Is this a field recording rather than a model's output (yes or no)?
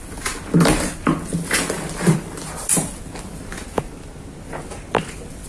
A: yes